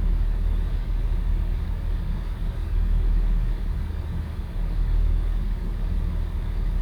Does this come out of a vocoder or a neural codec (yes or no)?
yes